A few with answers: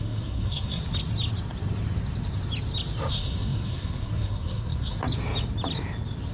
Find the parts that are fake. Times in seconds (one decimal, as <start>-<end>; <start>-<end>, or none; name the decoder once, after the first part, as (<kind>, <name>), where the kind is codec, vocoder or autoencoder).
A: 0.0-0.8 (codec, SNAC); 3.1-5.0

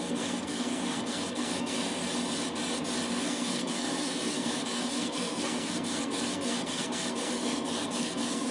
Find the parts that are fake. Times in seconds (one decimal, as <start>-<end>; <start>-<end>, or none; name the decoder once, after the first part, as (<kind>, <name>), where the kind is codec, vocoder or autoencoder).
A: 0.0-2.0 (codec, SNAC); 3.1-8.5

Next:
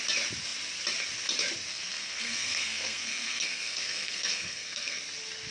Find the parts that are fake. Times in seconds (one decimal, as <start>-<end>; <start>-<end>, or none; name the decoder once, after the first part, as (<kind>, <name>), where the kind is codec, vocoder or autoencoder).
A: 1.7-5.0 (codec, SNAC)

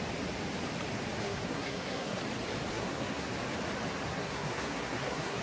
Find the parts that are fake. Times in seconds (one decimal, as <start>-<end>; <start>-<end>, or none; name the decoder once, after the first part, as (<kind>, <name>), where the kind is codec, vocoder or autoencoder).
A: 1.2-2.2 (codec, SNAC); 2.7-3.3; 4.1-5.4